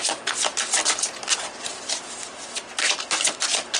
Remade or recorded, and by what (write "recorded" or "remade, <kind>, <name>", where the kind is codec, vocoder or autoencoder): recorded